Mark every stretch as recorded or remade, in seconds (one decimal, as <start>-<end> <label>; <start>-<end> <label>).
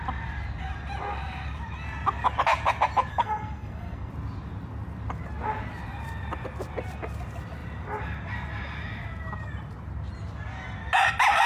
0.0-3.1 recorded; 3.1-4.1 remade; 4.1-11.5 recorded